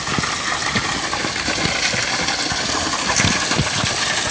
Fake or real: real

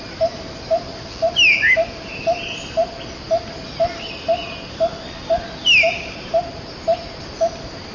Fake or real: real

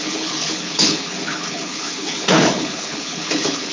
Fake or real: fake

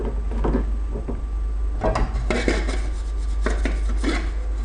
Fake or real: real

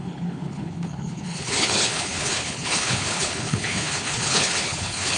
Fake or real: fake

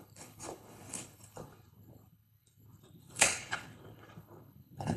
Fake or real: fake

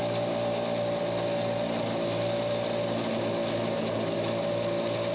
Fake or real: real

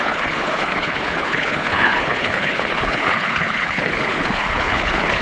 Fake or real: fake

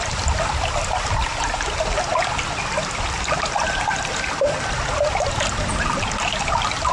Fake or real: real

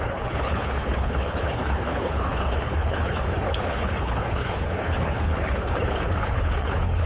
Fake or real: fake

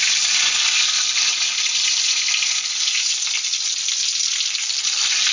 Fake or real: real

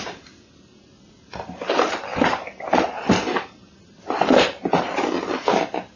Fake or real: real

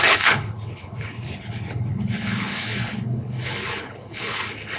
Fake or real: fake